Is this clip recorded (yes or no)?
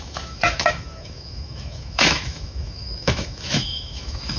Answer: no